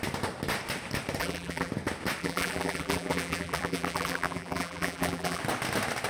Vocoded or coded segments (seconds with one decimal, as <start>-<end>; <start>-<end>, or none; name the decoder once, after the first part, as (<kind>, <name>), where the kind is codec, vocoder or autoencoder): 1.2-1.7 (vocoder, BigVGAN v2); 2.2-5.4